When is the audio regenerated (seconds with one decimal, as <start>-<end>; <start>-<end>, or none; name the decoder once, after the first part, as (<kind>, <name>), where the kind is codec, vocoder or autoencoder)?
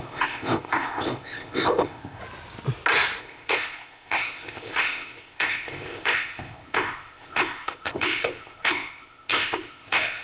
0.0-2.2 (codec, ZipCodec); 3.2-10.2